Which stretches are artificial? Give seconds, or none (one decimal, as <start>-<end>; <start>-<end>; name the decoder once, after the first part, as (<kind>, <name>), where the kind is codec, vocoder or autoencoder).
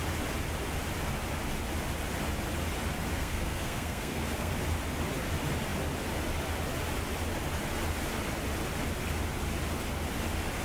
3.1-4.5 (codec, SNAC)